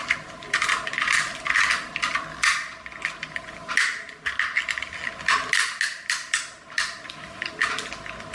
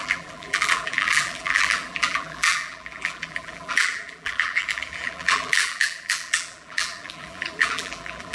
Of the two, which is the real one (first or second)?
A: first